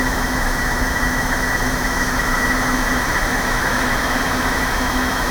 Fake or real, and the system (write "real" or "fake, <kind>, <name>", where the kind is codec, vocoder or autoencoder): fake, autoencoder, DAC-VAE